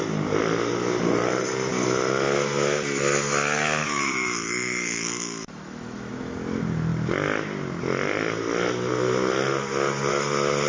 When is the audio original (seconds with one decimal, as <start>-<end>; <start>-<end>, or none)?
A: 0.0-3.8; 6.1-10.7